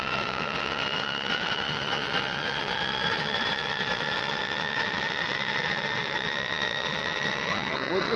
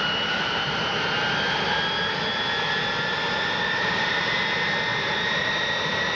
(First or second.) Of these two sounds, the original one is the second